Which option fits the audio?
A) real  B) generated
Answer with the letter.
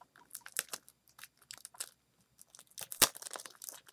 A